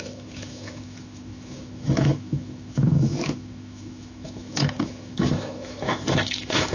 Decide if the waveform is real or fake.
fake